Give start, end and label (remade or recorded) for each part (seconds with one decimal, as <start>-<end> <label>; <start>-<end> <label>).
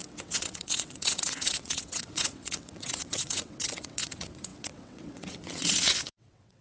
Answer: 0.0-6.6 remade